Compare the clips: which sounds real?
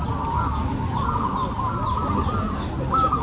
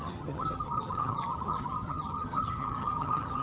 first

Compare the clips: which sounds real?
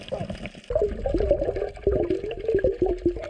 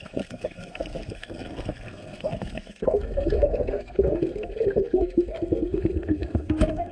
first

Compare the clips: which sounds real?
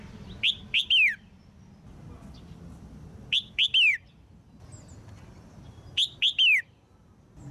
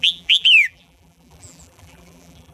first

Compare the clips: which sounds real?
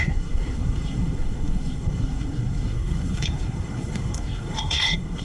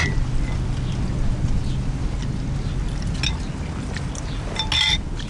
second